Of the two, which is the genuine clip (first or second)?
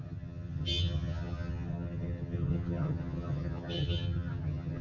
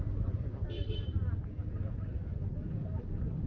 second